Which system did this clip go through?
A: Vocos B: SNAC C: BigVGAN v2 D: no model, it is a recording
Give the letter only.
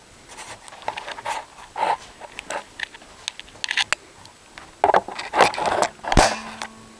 D